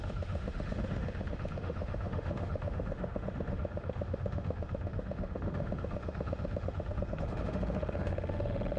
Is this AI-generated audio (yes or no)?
yes